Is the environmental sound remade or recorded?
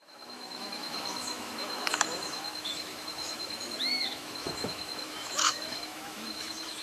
remade